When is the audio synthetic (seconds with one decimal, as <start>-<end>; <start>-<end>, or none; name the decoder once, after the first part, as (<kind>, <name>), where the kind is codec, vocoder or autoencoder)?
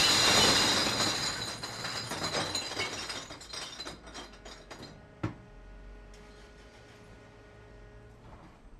none